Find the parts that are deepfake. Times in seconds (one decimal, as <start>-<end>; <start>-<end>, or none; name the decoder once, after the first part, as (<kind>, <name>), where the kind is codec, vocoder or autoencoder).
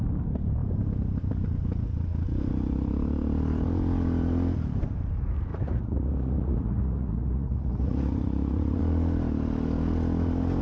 5.5-8.8 (vocoder, Vocos)